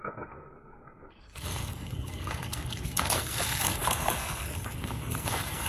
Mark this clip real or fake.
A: fake